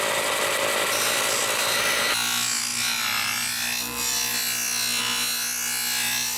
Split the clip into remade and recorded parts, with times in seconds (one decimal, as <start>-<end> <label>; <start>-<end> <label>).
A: 0.0-6.4 recorded